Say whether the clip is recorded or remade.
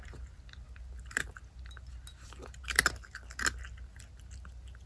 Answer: recorded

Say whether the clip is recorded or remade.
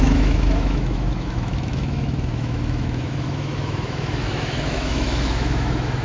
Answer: remade